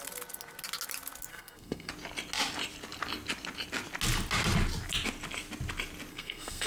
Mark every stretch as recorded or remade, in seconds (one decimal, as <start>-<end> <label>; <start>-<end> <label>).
0.0-1.3 recorded; 1.3-1.9 remade; 1.9-6.1 recorded; 6.1-6.7 remade

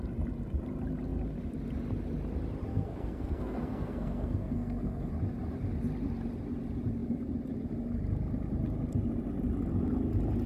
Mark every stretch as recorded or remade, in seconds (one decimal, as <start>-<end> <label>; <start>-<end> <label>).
0.0-2.7 recorded; 2.7-5.1 remade; 5.1-10.5 recorded

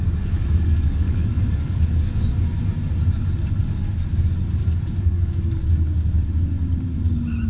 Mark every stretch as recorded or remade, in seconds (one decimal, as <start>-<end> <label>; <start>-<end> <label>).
0.0-2.3 remade; 2.3-5.0 recorded; 5.0-5.6 remade; 5.6-7.5 recorded

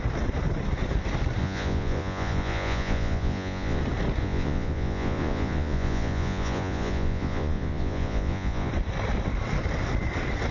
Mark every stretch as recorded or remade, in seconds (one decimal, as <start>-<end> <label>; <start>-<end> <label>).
0.0-1.4 recorded; 1.4-3.8 remade; 3.8-4.2 recorded; 4.2-8.7 remade; 8.7-10.5 recorded

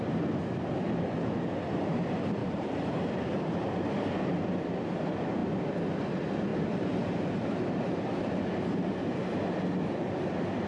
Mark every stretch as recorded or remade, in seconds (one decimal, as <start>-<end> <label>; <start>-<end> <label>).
0.0-2.4 recorded; 2.4-4.5 remade; 4.5-6.5 recorded; 6.5-9.0 remade; 9.0-10.7 recorded

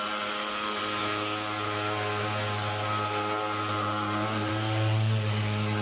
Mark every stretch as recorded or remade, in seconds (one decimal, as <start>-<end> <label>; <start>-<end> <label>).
0.0-5.8 recorded

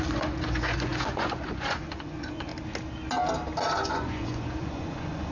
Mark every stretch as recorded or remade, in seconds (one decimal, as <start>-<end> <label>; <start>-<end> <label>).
0.0-2.5 remade; 2.5-3.9 recorded; 3.9-5.3 remade

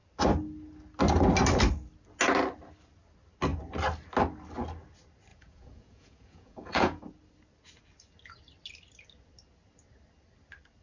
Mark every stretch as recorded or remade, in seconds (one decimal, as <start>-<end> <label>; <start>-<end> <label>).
0.0-5.3 recorded; 5.3-7.0 remade; 7.0-10.8 recorded